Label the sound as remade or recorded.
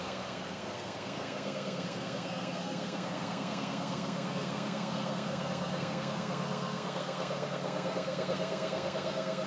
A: remade